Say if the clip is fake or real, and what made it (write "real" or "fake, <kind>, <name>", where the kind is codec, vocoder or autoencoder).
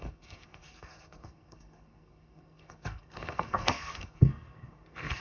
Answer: fake, codec, SNAC